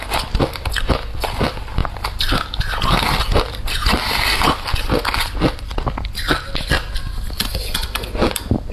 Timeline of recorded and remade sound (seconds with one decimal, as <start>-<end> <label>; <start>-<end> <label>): 0.0-8.7 recorded